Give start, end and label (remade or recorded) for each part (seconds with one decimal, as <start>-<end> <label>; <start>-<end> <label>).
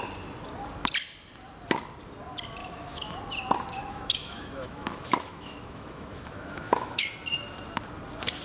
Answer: 0.0-2.6 recorded; 2.6-3.2 remade; 3.2-3.8 recorded; 3.8-7.1 remade; 7.1-8.4 recorded